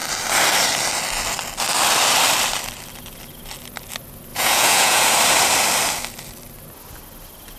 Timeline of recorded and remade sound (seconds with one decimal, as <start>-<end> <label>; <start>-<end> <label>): 0.0-4.3 recorded; 4.3-5.0 remade; 5.0-7.6 recorded